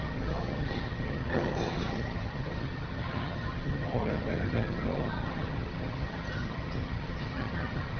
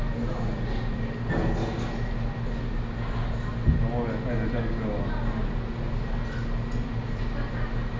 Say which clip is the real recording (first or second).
second